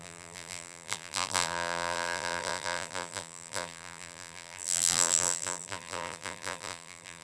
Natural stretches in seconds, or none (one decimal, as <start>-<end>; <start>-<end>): none